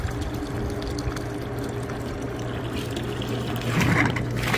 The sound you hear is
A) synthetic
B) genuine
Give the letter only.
B